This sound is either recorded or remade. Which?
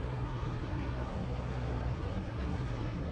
remade